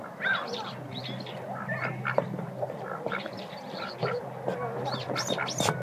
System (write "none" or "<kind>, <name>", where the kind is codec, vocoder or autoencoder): none